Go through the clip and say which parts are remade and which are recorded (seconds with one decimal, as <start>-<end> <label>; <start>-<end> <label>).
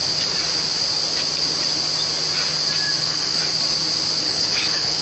0.0-3.0 recorded; 3.0-3.4 remade; 3.4-4.2 recorded; 4.2-5.0 remade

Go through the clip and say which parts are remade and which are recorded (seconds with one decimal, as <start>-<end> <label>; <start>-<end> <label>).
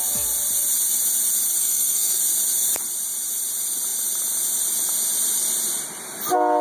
0.0-1.6 recorded; 1.6-2.2 remade; 2.2-6.6 recorded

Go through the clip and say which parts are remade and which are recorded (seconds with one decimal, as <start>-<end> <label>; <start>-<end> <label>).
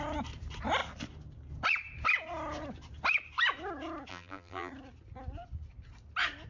0.0-4.1 recorded; 4.1-4.7 remade; 4.7-6.5 recorded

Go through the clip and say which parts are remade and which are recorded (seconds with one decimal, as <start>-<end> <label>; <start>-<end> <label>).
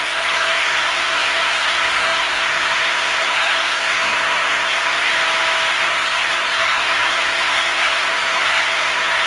0.0-5.1 remade; 5.1-5.7 recorded; 5.7-9.3 remade